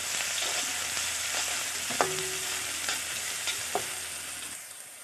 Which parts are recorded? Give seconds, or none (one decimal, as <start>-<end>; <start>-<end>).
0.0-5.0

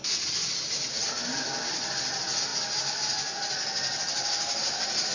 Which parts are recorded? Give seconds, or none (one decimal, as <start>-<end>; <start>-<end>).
0.0-5.1

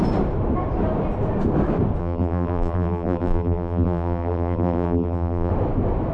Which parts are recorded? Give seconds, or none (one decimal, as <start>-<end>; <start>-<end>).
0.0-2.0; 5.5-6.1